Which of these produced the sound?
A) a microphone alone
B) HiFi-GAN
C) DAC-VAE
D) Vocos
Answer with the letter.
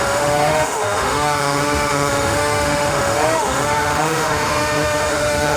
C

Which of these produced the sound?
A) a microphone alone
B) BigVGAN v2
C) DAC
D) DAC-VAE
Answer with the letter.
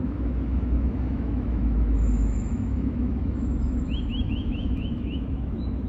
D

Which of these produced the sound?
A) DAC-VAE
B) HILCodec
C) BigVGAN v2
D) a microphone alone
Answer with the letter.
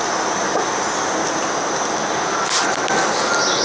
D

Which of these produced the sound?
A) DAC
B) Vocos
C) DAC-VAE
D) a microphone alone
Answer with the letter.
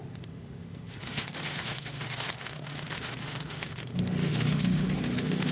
C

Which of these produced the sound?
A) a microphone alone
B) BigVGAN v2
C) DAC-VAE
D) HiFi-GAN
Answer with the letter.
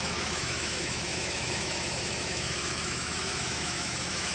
C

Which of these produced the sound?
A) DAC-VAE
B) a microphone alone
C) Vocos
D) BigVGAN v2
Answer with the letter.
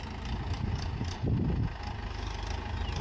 B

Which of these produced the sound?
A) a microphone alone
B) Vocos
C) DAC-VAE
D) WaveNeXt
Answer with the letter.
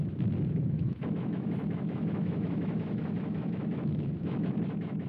C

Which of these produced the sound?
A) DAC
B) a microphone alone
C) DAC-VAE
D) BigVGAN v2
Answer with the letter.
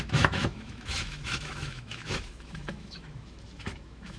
C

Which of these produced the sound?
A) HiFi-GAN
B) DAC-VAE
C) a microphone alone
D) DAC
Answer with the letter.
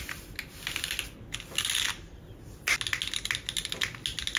C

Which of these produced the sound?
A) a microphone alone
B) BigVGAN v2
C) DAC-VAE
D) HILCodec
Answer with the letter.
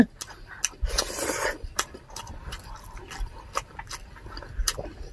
A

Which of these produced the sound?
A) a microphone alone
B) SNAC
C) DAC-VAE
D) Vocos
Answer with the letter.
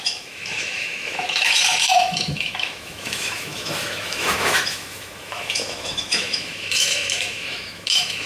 C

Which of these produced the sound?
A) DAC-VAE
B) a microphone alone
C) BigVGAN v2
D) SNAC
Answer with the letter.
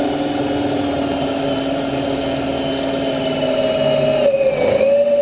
B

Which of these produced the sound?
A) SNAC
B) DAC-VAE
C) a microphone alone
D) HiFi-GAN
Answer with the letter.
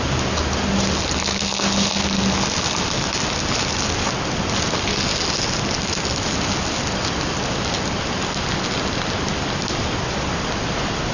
C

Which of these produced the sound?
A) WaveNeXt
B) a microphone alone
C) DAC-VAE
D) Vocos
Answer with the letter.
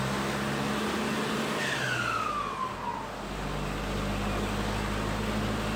B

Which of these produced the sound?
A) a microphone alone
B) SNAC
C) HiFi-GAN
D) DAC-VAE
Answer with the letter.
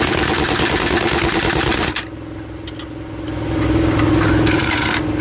A